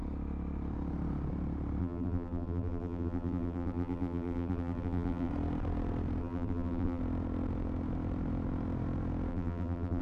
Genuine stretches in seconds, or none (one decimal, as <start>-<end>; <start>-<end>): 0.0-1.8; 5.3-6.2; 7.0-9.3